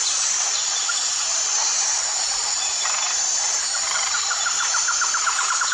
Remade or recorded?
remade